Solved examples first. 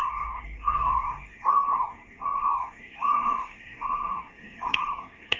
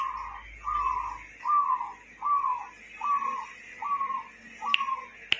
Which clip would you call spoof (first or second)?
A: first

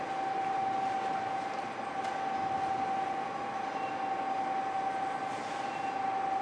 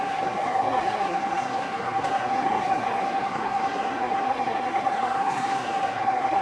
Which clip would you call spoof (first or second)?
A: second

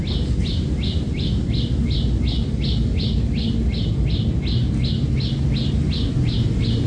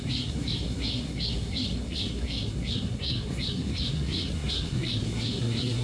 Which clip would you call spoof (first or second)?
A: second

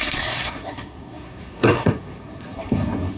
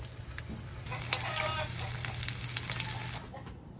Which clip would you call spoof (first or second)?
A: first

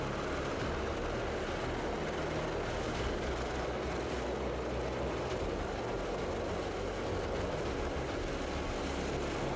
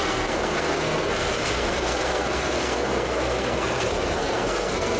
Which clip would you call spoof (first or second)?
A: second